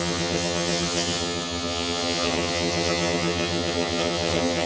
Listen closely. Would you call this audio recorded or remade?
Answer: remade